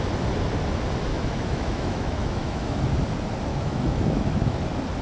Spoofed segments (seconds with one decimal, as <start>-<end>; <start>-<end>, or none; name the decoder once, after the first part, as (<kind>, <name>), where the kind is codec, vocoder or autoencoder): 1.1-2.8 (autoencoder, DAC-VAE); 3.5-4.6